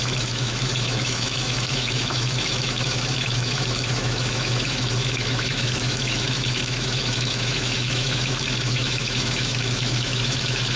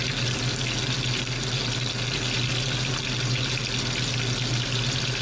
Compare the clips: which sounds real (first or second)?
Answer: second